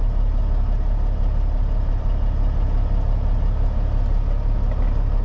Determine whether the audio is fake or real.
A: real